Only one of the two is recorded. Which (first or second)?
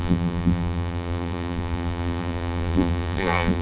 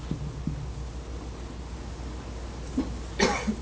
second